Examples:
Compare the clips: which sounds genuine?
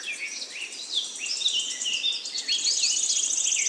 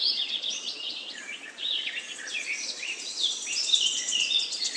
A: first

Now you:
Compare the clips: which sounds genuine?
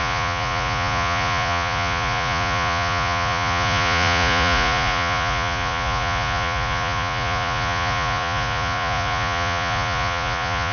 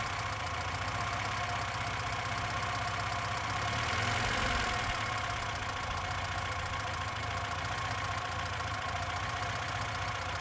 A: second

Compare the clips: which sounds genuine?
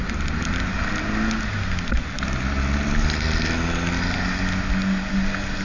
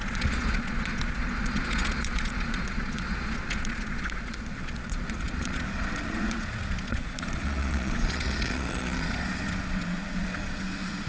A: first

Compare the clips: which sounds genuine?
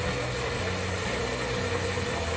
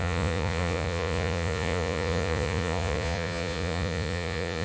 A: first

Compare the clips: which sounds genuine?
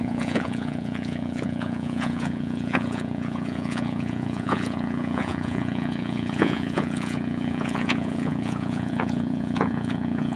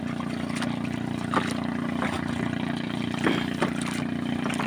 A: second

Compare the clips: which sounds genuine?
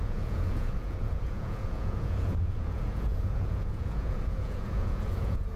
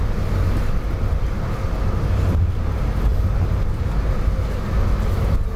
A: second